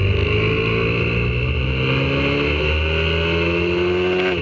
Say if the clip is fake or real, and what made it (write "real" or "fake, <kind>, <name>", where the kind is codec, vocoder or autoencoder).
real